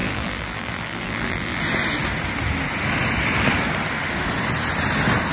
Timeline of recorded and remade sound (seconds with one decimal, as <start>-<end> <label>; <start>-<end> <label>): 0.0-1.6 remade; 1.6-5.3 recorded